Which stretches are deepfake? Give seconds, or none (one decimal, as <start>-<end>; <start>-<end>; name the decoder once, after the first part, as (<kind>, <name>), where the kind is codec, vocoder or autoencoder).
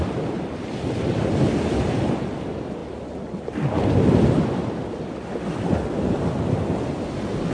none